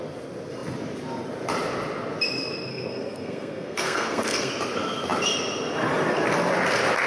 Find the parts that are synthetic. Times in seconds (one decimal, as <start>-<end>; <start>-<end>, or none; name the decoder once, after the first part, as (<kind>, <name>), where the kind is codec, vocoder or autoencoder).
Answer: 2.7-4.5 (codec, SNAC)